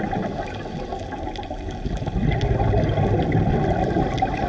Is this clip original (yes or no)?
yes